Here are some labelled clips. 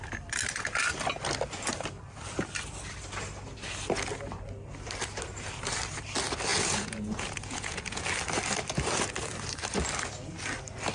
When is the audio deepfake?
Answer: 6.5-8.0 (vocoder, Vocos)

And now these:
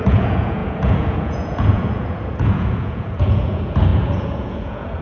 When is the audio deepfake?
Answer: 0.0-5.0 (vocoder, Vocos)